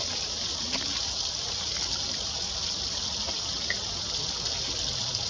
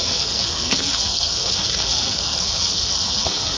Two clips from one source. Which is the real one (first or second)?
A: first